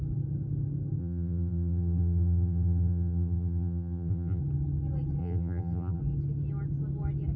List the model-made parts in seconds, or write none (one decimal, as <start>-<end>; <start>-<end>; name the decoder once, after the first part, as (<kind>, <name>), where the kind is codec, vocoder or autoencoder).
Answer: 1.0-4.4 (vocoder, BigVGAN v2); 5.2-6.0